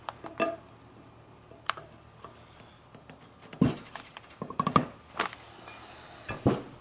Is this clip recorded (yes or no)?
yes